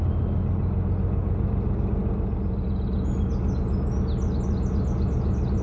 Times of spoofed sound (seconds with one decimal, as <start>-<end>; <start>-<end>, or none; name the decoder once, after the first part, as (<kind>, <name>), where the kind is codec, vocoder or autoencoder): none